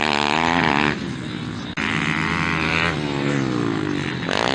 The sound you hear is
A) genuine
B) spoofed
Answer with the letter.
A